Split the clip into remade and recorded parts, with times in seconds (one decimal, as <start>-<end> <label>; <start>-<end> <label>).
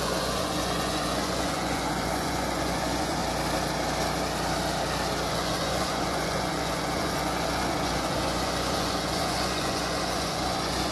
0.0-3.2 remade; 3.2-5.3 recorded; 5.3-10.9 remade